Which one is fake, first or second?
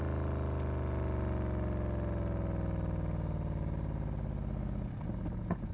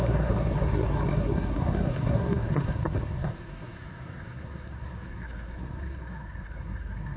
second